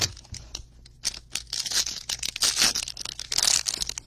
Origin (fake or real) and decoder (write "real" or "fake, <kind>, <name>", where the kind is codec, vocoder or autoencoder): real